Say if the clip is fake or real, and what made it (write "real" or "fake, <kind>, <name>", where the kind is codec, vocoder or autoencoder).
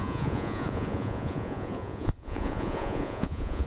fake, vocoder, Vocos